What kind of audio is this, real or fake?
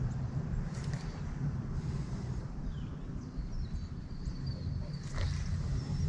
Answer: real